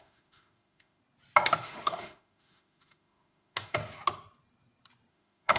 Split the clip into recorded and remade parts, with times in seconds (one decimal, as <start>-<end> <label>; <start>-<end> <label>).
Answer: 0.0-1.0 remade; 1.0-1.6 recorded; 1.6-3.8 remade; 3.8-5.1 recorded; 5.1-5.6 remade